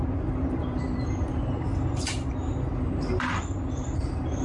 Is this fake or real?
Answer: real